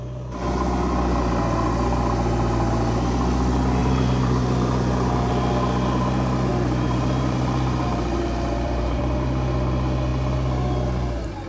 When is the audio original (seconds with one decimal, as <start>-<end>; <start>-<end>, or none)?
0.0-3.8; 5.3-6.5; 9.0-11.5